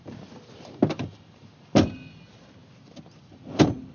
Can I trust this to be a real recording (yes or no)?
no